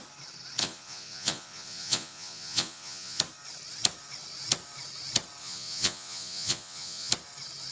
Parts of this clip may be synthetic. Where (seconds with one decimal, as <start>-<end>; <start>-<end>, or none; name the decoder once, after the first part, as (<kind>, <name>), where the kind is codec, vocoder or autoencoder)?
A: 0.6-3.2 (vocoder, Vocos); 5.4-7.1

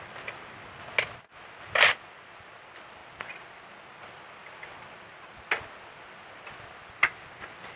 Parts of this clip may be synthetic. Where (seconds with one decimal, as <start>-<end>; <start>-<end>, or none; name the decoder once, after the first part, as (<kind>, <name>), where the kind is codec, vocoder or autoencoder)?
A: none